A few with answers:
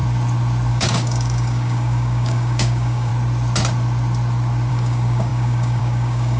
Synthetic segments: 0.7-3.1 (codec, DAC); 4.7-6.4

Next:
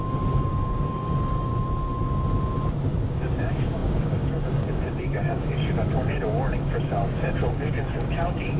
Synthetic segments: 0.0-1.5 (codec, DAC); 3.0-8.6

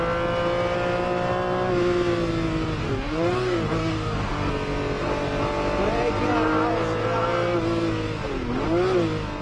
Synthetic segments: 2.8-4.5 (codec, DAC)

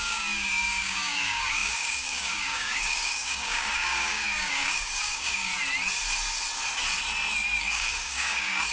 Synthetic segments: 0.0-5.5 (codec, DAC); 7.6-8.7

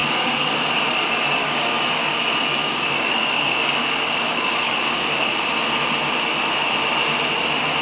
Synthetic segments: 0.0-0.7 (codec, DAC); 1.4-2.2; 2.6-5.3

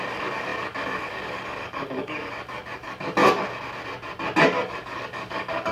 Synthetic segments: 0.0-3.2 (codec, DAC); 4.4-5.7

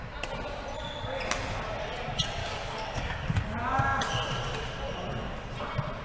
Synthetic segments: 2.4-3.4 (codec, DAC)